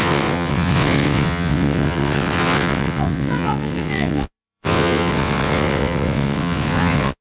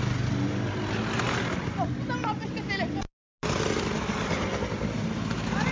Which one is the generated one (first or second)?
first